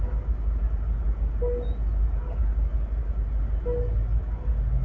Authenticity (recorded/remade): recorded